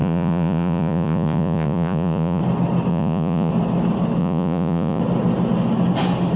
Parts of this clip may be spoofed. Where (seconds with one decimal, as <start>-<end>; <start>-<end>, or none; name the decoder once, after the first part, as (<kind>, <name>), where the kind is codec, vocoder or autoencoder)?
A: 0.0-2.4 (vocoder, Vocos); 2.9-3.5; 4.2-5.0